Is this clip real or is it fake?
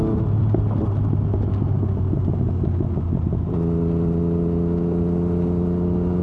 real